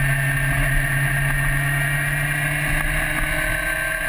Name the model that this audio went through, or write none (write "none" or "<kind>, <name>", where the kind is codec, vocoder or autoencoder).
none